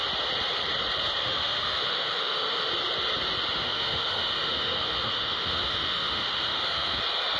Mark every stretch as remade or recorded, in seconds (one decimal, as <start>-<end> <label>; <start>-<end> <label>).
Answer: 0.0-1.2 recorded; 1.2-2.7 remade; 2.7-3.6 recorded; 3.6-7.0 remade; 7.0-7.4 recorded